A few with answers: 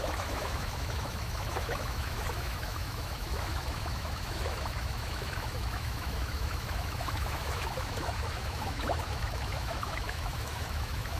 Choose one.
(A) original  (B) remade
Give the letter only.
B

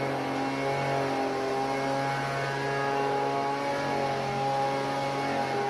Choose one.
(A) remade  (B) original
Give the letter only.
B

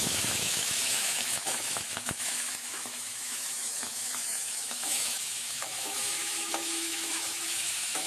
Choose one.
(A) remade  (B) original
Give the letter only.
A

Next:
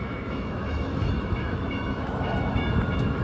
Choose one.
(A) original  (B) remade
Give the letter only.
B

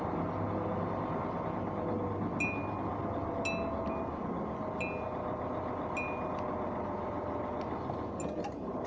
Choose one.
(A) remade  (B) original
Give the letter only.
B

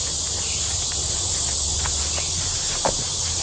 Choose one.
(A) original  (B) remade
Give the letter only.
A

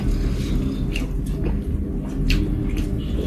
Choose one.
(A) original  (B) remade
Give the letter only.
A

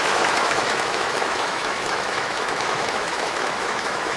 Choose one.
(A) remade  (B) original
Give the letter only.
A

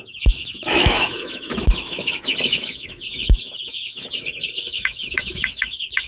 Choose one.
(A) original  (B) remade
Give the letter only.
B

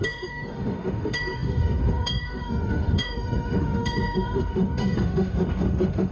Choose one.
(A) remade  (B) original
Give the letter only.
A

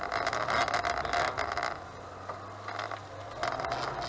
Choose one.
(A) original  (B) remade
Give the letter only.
A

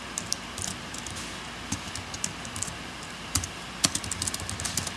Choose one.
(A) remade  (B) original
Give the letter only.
B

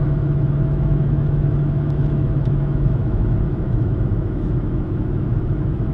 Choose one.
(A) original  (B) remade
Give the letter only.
B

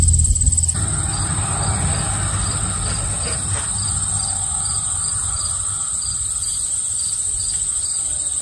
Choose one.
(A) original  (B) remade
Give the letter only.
A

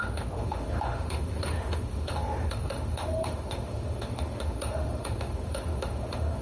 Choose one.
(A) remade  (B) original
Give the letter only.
A